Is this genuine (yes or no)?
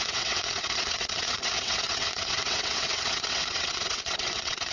no